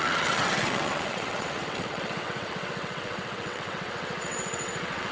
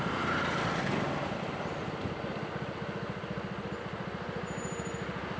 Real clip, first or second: second